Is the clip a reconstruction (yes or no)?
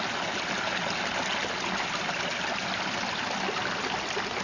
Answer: no